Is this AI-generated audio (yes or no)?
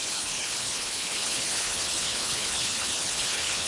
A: yes